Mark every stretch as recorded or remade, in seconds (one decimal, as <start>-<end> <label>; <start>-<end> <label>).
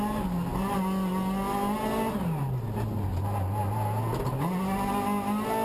0.0-5.6 recorded